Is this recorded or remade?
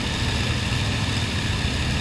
recorded